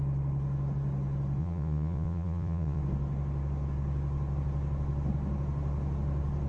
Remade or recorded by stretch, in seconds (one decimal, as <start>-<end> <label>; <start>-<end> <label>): 0.0-1.4 recorded; 1.4-2.8 remade; 2.8-6.5 recorded